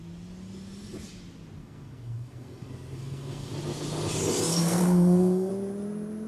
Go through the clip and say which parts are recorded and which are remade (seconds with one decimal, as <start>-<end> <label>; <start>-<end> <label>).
0.0-1.6 recorded; 1.6-3.5 remade; 3.5-4.5 recorded; 4.5-5.5 remade; 5.5-6.3 recorded